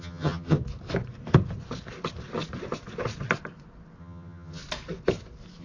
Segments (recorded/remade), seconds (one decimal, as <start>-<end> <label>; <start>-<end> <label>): 0.0-0.6 remade; 0.6-4.0 recorded; 4.0-4.6 remade; 4.6-5.6 recorded